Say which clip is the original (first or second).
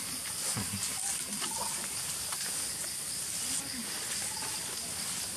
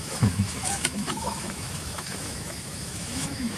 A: first